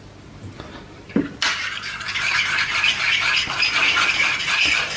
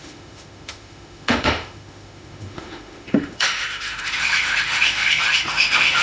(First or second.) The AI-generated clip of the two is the second